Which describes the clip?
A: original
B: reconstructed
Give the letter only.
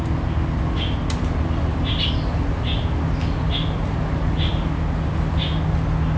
A